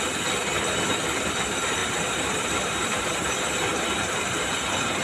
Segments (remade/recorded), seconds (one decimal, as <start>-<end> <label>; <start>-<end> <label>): 0.0-1.8 recorded; 1.8-3.1 remade; 3.1-3.7 recorded; 3.7-4.5 remade; 4.5-5.0 recorded